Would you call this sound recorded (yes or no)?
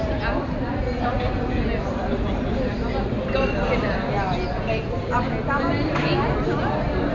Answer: yes